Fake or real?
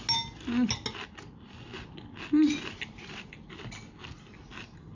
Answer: real